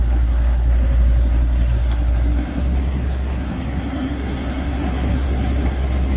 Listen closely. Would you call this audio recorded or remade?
remade